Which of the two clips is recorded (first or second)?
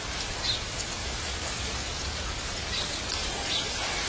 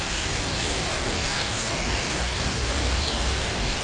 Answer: first